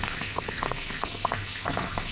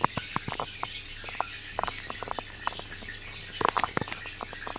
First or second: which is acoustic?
second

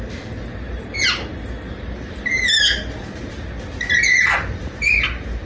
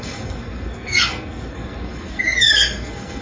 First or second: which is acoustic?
first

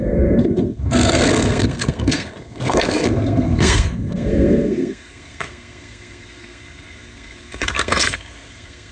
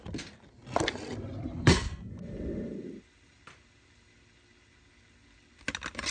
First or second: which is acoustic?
second